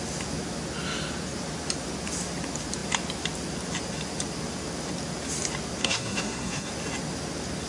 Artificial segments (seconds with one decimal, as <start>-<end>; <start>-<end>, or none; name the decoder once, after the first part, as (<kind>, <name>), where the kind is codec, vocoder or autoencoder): 5.8-6.7 (codec, SNAC)